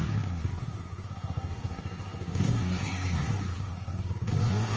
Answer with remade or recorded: remade